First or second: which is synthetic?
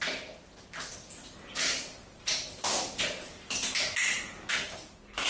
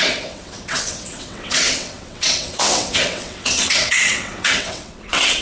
second